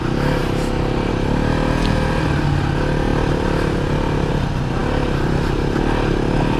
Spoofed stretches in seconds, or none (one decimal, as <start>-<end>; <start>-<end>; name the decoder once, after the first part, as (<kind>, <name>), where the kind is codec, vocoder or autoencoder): none